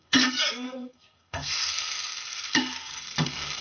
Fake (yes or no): yes